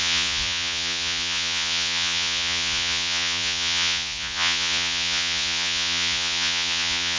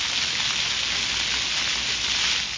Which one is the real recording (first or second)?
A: second